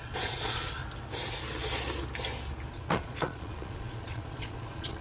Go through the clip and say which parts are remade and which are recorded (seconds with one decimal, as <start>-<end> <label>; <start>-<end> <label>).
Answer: 0.0-0.8 remade; 0.8-2.7 recorded; 2.7-5.0 remade